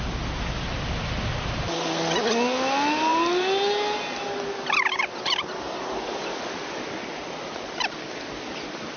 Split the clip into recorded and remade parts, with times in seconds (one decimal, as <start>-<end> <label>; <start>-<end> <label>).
0.0-9.0 recorded